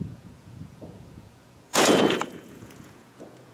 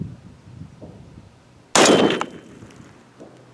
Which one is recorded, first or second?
second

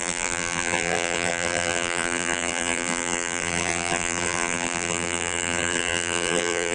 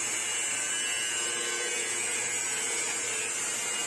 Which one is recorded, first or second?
second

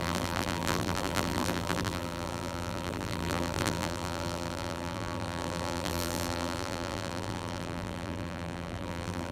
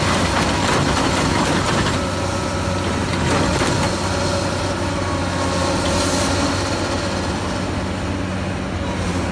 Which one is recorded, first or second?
second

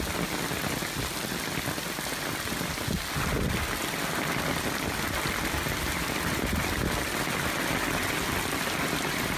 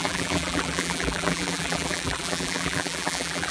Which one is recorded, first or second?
first